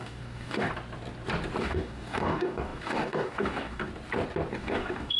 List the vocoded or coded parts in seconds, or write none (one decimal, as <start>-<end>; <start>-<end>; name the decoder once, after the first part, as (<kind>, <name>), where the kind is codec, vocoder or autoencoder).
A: 0.0-0.7 (codec, DAC); 1.6-3.9; 4.5-5.2